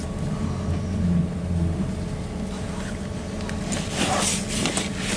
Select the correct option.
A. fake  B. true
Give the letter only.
B